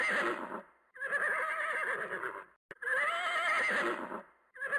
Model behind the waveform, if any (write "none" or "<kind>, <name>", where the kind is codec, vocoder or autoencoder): none